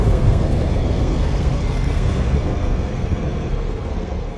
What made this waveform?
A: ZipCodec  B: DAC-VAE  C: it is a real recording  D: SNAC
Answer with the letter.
D